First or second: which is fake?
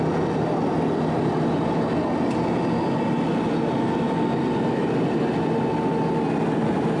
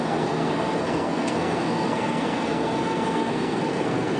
second